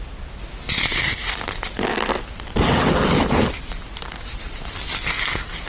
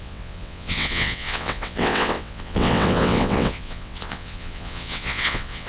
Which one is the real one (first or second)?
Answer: first